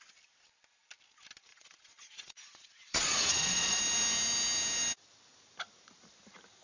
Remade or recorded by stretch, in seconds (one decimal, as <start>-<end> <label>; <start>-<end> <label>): 0.0-1.5 recorded; 1.5-3.8 remade; 3.8-6.6 recorded